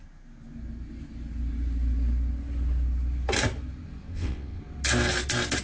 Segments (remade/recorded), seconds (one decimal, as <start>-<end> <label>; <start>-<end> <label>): 0.0-4.1 recorded; 4.1-4.6 remade; 4.6-5.6 recorded